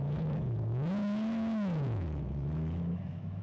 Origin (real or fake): fake